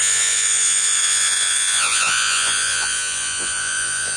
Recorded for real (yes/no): no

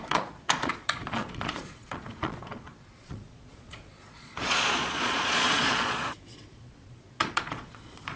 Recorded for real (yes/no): no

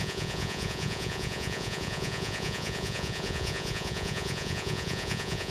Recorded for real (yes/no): no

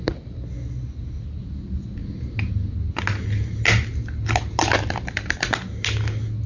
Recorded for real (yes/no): yes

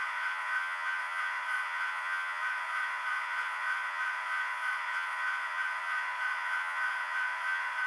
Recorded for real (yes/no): no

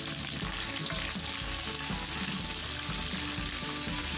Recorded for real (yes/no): yes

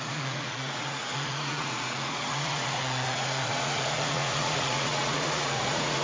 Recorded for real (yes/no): no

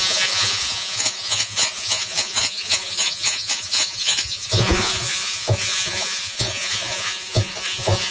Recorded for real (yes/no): no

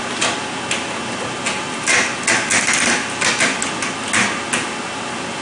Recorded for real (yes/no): yes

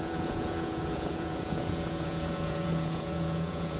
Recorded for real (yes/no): no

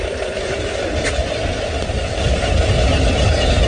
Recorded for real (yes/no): yes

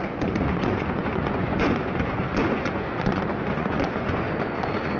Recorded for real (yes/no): no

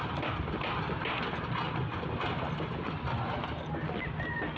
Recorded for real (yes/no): yes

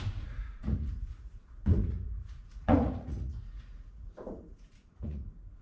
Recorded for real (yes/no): no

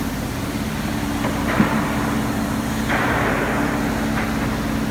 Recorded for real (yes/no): yes